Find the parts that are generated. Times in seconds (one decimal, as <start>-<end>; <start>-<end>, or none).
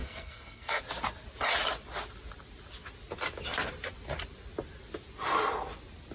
0.0-0.8